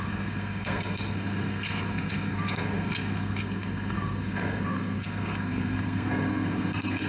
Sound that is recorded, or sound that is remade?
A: remade